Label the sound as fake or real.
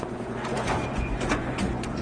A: fake